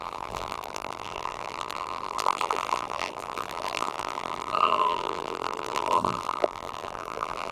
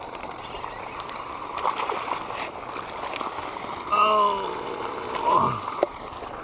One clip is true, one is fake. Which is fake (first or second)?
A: first